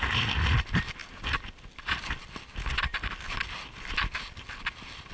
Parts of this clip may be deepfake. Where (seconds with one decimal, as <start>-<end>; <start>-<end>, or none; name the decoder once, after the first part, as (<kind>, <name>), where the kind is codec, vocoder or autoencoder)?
none